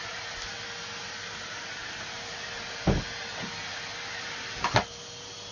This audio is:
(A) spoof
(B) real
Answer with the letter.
B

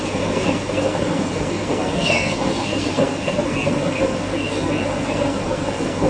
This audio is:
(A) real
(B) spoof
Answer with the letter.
B